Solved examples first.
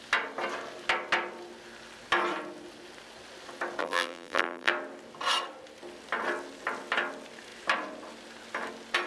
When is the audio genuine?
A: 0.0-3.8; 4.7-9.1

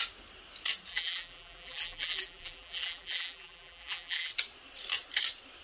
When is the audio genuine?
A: 0.0-0.9; 4.3-5.6

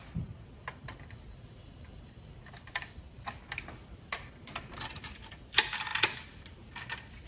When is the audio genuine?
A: 0.0-7.3

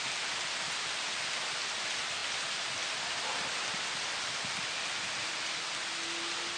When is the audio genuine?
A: 0.0-6.6

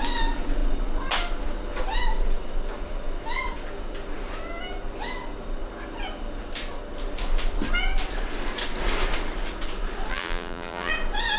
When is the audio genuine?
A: 0.0-10.1; 10.9-11.4

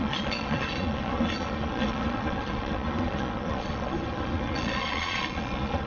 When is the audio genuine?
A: none